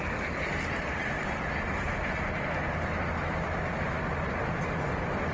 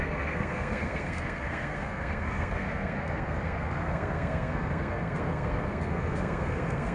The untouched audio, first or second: first